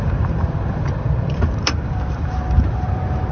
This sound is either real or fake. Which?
fake